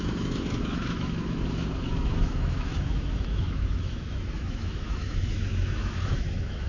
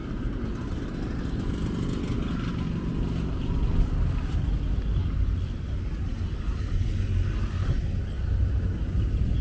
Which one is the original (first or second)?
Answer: second